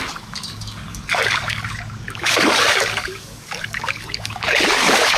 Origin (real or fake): fake